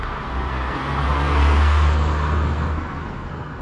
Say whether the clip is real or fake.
fake